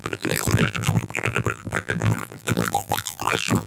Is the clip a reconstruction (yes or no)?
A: yes